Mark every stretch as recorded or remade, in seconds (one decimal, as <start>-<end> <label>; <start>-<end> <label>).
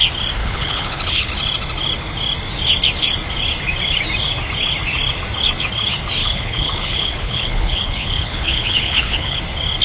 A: 0.0-0.4 recorded; 0.4-1.3 remade; 1.3-6.2 recorded; 6.2-9.4 remade; 9.4-9.8 recorded